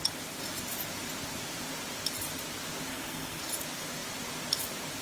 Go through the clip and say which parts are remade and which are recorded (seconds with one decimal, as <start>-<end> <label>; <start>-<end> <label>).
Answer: 0.0-2.9 recorded; 2.9-3.4 remade; 3.4-5.0 recorded